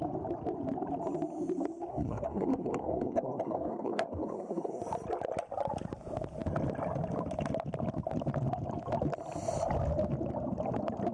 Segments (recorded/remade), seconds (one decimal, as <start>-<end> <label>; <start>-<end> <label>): 0.0-1.9 recorded; 1.9-4.8 remade; 4.8-11.1 recorded